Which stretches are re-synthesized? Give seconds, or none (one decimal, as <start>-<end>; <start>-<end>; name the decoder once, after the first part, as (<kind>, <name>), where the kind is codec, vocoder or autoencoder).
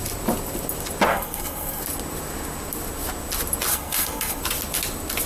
1.1-1.8 (codec, SNAC); 3.7-4.4